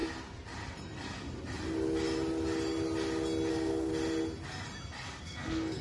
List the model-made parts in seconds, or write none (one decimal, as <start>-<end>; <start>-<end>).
3.5-3.9; 5.2-5.8